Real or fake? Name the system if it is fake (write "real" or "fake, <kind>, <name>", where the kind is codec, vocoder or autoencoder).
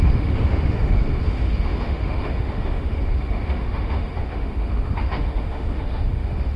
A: fake, autoencoder, DAC-VAE